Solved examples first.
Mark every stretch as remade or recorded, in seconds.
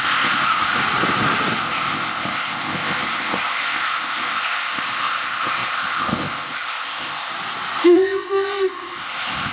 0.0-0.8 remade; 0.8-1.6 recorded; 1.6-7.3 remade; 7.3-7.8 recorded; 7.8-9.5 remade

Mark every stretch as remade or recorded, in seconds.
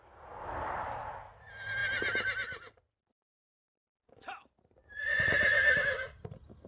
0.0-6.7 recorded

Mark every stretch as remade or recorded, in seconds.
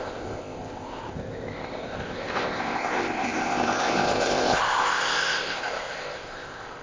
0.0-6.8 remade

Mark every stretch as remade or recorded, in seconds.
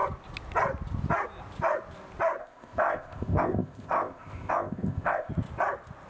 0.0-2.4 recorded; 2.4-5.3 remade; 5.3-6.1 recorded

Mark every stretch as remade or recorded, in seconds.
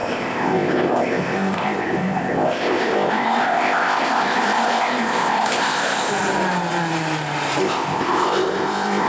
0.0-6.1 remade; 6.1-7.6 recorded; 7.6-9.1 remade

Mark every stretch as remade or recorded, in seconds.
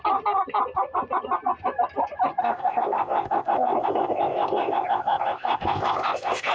0.0-2.4 recorded; 2.4-6.5 remade